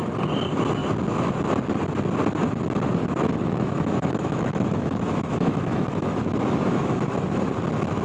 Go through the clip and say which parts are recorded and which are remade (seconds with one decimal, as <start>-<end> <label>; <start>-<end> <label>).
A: 0.0-3.0 recorded; 3.0-7.5 remade; 7.5-8.0 recorded